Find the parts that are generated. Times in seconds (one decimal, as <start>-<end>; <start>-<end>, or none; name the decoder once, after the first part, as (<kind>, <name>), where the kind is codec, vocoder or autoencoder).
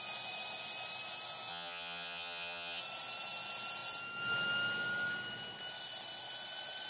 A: 1.5-2.8 (vocoder, HiFi-GAN)